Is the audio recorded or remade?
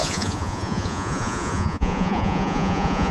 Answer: remade